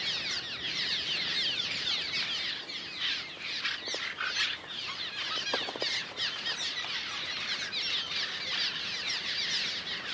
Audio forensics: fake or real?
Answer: real